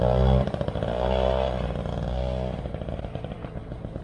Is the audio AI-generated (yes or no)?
no